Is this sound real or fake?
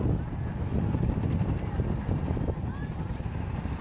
real